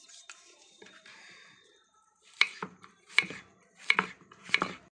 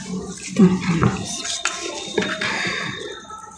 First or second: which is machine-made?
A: first